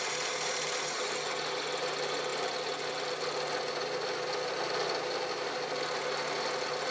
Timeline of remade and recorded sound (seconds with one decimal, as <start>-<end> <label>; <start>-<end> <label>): 0.0-6.9 recorded

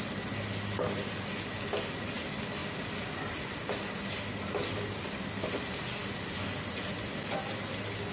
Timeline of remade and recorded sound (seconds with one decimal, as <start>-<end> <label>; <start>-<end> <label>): 0.0-8.1 recorded

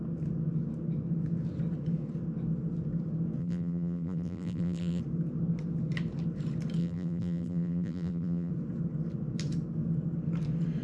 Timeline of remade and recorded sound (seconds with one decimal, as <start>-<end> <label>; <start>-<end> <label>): 0.0-3.4 recorded; 3.4-5.0 remade; 5.0-6.8 recorded; 6.8-8.5 remade; 8.5-10.8 recorded

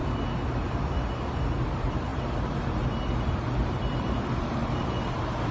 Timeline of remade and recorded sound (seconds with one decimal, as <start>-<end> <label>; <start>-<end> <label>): 0.0-1.3 recorded; 1.3-5.5 remade

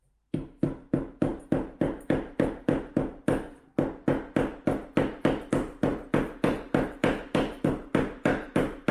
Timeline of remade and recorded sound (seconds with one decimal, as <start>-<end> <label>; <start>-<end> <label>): 0.0-3.5 remade; 3.5-5.5 recorded; 5.5-8.9 remade

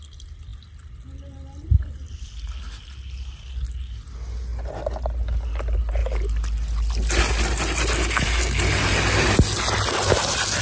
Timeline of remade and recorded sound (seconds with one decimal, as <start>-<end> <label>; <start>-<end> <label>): 0.0-10.6 recorded